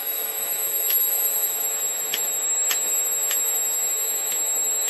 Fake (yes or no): yes